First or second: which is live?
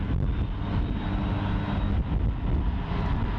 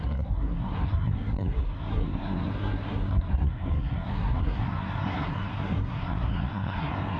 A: first